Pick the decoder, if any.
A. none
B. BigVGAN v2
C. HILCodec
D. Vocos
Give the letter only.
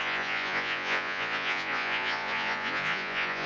D